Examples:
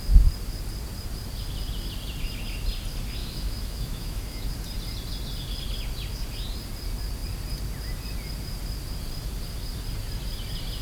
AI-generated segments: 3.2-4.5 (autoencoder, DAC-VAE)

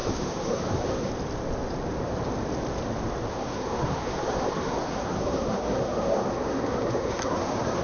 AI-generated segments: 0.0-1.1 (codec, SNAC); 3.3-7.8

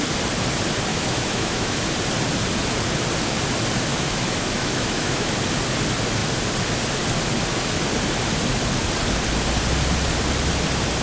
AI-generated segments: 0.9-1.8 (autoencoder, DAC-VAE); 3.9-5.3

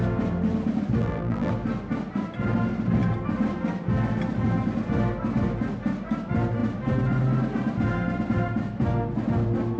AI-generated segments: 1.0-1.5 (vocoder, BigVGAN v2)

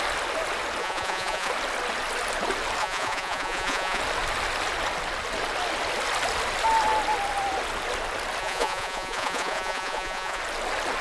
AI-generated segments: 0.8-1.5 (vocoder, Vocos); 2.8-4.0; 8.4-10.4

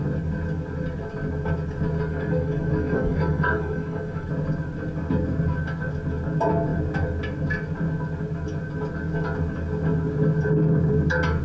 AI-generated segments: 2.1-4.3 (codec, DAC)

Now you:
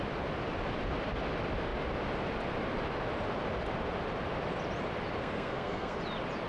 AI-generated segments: 5.2-6.0 (codec, SNAC)

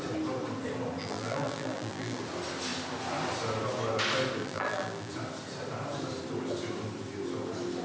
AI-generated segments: 1.0-2.2 (vocoder, BigVGAN v2); 4.4-5.1